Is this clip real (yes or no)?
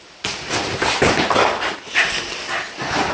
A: yes